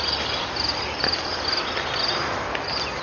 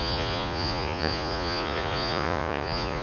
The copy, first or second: second